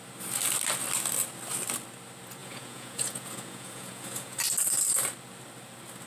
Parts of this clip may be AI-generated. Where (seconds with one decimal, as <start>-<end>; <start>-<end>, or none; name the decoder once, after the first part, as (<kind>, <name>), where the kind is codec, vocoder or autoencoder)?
2.4-4.4 (vocoder, Vocos)